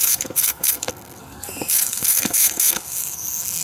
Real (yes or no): no